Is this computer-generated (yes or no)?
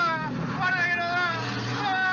no